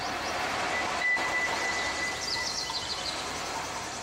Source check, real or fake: real